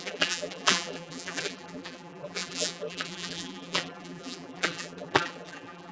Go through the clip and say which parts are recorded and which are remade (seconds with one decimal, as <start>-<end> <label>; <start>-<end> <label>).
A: 0.0-5.9 remade